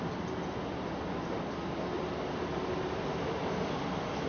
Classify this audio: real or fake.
real